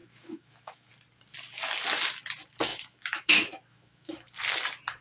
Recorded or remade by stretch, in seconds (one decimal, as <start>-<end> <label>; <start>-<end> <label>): 0.0-0.9 remade; 0.9-2.7 recorded; 2.7-4.4 remade; 4.4-5.0 recorded